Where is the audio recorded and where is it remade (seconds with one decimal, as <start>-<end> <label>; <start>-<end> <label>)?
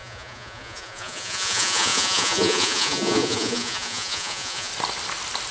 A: 0.0-4.7 remade; 4.7-5.5 recorded